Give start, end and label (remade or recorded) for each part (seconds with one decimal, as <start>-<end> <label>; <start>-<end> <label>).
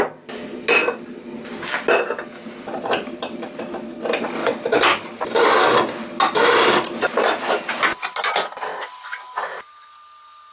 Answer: 0.0-10.5 recorded